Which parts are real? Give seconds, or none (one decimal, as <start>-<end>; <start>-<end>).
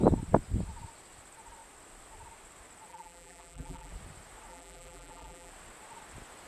0.0-2.9; 3.9-4.5; 5.5-6.5